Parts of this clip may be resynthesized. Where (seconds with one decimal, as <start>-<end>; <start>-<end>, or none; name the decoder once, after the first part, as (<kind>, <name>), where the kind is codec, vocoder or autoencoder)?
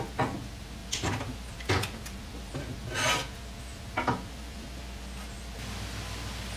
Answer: 0.8-2.6 (vocoder, BigVGAN v2); 3.7-4.8